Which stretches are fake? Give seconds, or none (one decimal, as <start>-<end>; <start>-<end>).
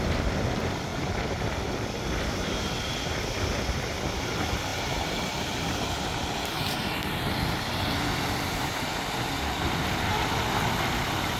0.9-1.9; 8.9-10.1